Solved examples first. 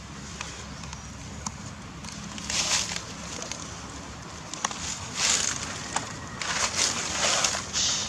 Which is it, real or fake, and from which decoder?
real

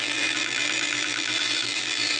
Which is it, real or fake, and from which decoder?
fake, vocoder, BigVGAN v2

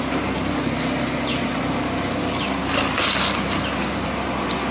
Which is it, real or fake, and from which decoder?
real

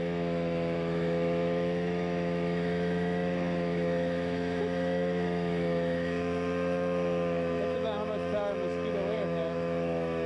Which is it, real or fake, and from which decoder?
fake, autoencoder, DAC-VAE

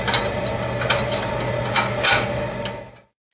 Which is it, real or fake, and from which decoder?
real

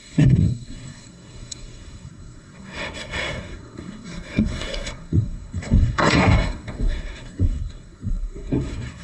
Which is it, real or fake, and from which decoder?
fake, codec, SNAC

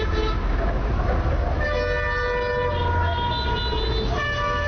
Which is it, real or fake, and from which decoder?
real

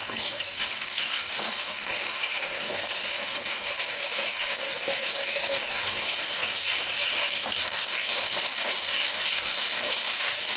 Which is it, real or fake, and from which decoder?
fake, codec, DAC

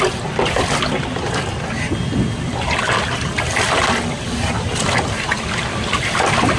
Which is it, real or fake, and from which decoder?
real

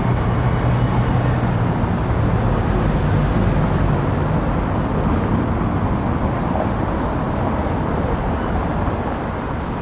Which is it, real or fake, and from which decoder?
real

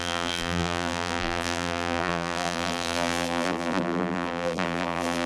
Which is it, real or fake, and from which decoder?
fake, vocoder, BigVGAN v2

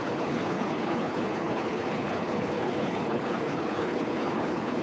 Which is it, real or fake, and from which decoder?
fake, codec, HILCodec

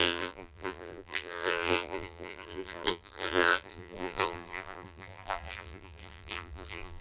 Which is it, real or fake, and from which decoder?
fake, vocoder, BigVGAN v2